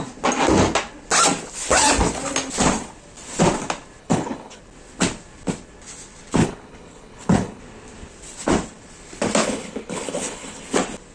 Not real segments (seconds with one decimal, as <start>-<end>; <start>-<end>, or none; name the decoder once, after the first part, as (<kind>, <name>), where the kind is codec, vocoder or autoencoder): 4.0-4.6 (codec, HILCodec); 6.4-7.6; 9.4-10.6